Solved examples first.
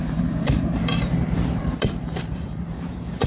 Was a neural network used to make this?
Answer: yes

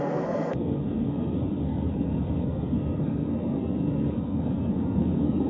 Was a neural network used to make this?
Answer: yes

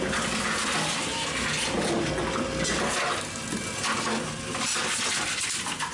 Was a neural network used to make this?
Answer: no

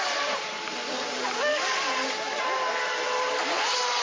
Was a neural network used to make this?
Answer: no